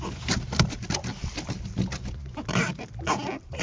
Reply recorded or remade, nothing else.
recorded